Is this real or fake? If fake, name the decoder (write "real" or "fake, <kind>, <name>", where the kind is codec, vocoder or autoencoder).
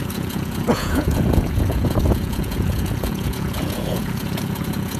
fake, vocoder, Vocos